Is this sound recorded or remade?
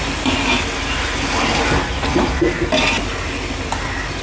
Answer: recorded